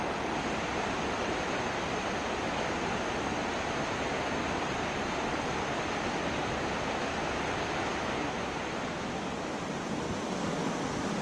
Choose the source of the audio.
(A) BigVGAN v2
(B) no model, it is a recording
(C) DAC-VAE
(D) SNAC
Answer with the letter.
B